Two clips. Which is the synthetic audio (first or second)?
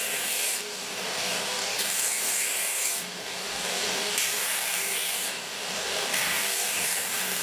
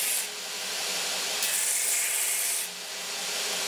first